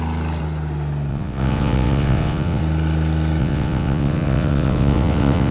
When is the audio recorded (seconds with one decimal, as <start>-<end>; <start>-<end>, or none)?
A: 0.0-1.1; 2.6-3.4